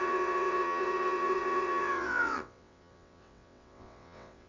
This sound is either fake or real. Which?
fake